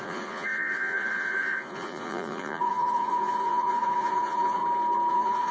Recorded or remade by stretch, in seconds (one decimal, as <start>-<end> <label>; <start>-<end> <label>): 0.0-4.6 remade; 4.6-5.1 recorded; 5.1-5.5 remade